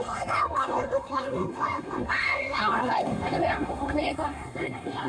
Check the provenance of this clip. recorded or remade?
remade